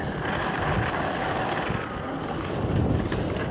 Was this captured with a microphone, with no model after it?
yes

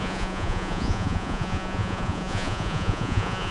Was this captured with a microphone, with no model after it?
no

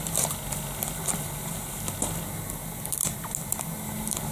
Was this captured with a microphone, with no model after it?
yes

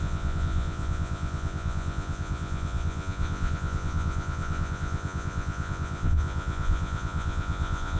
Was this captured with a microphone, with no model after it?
no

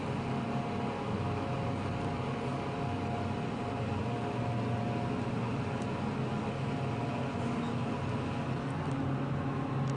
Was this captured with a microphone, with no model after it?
yes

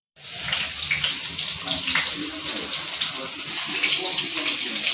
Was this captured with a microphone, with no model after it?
yes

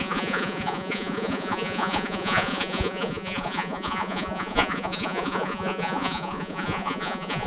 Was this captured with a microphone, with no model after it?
no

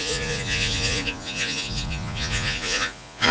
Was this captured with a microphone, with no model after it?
no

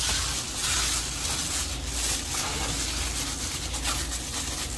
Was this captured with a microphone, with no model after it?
yes